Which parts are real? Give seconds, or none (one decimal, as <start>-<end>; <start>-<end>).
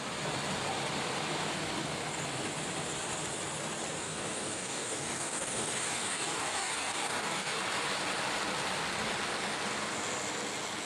0.0-4.0; 7.6-10.9